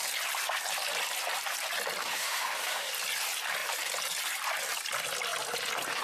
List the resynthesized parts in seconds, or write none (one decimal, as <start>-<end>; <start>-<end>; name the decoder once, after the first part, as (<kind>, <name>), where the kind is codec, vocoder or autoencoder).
2.0-2.9 (autoencoder, DAC-VAE)